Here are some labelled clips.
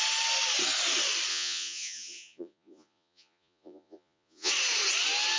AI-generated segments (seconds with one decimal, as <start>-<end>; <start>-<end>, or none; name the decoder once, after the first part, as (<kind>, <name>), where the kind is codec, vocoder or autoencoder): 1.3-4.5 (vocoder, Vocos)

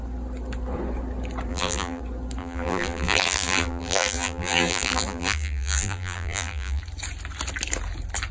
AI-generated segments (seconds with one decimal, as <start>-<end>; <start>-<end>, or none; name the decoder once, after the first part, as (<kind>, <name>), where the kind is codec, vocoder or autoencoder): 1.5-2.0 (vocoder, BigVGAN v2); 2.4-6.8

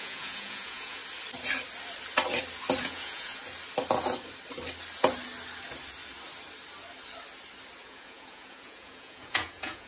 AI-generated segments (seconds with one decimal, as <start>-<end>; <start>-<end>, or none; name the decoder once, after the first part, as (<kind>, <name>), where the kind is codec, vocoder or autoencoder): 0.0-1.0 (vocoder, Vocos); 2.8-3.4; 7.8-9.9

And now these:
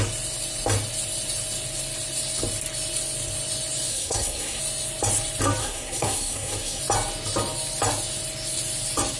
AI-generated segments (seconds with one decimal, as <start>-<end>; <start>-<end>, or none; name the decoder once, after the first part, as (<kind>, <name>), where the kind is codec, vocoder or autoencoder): 3.9-4.6 (codec, SNAC); 5.6-6.8

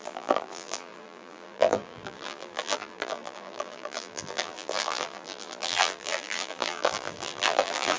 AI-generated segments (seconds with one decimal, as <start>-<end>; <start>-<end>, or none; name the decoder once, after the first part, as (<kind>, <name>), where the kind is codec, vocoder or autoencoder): 0.0-8.0 (vocoder, BigVGAN v2)

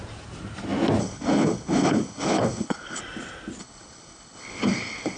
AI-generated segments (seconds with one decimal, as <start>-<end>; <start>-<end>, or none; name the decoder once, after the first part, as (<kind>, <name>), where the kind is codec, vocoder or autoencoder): 1.0-3.0 (codec, HILCodec); 3.6-5.2

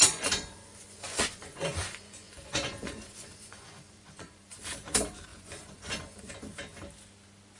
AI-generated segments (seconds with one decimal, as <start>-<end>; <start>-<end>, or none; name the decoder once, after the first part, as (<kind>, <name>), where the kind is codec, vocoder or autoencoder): 0.0-4.6 (vocoder, Vocos); 5.3-6.3